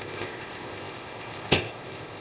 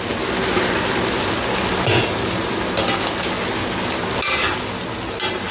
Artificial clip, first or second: first